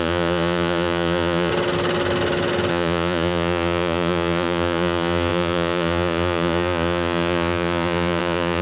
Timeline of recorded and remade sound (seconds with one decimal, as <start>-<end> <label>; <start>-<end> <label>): 0.0-1.5 remade; 1.5-2.7 recorded; 2.7-8.6 remade